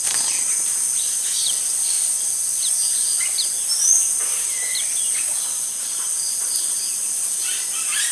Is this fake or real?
real